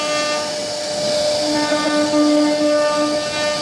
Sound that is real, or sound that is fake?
real